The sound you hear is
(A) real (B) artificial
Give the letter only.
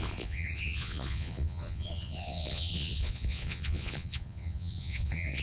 B